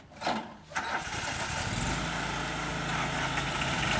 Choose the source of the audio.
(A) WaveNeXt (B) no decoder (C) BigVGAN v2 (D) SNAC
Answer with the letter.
B